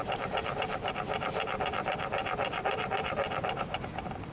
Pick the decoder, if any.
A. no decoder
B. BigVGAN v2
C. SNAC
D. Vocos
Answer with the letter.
A